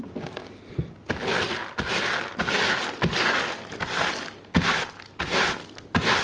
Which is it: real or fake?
real